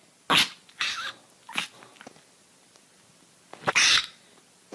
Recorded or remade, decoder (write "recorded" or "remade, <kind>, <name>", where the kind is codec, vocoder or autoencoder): recorded